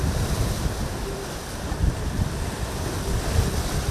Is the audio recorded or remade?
recorded